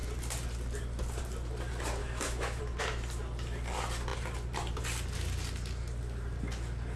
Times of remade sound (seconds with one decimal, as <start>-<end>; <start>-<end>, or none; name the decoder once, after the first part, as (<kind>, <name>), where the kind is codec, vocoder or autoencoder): 2.0-2.6 (autoencoder, DAC-VAE)